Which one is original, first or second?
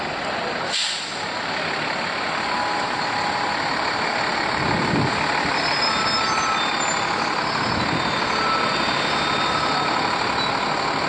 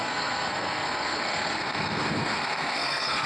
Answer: first